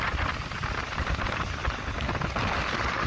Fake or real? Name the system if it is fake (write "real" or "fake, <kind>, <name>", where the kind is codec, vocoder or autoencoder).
real